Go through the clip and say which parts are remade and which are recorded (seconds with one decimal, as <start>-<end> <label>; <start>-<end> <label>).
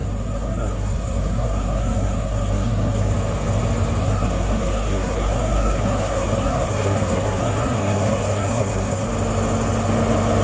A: 0.0-3.1 remade; 3.1-4.0 recorded; 4.0-9.1 remade; 9.1-10.4 recorded